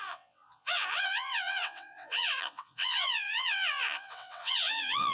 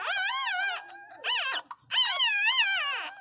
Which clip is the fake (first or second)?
first